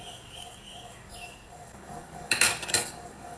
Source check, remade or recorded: remade